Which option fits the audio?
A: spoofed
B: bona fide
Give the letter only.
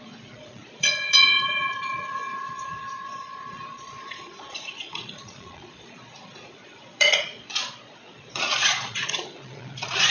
A